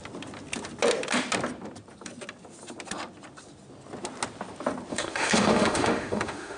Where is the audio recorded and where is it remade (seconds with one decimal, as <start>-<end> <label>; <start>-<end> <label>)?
0.0-4.9 recorded; 4.9-6.6 remade